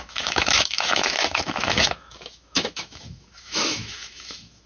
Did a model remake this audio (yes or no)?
yes